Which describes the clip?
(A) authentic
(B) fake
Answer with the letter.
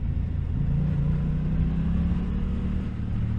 A